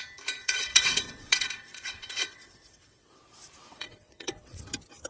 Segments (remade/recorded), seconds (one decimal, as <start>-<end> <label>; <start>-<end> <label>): 0.0-0.4 recorded; 0.4-3.2 remade; 3.2-3.7 recorded; 3.7-4.6 remade; 4.6-5.1 recorded